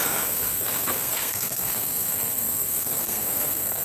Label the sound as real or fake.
fake